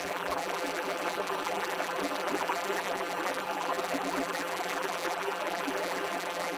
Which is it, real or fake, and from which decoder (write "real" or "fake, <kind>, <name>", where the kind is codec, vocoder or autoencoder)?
fake, vocoder, BigVGAN v2